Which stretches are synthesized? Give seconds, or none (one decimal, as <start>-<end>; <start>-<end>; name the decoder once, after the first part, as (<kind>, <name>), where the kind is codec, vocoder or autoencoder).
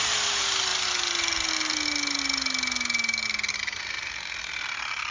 none